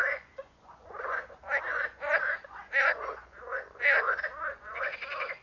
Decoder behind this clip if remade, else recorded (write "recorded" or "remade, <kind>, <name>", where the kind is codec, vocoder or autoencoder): remade, vocoder, Vocos